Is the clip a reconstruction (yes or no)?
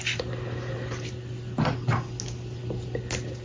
no